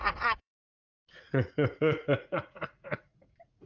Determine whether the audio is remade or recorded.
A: remade